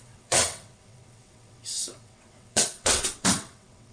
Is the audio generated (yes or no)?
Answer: yes